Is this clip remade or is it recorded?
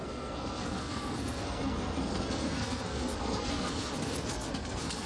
remade